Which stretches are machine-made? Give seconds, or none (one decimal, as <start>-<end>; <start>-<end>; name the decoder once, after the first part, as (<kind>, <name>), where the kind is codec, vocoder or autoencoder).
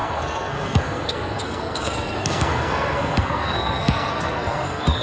0.0-5.0 (codec, SNAC)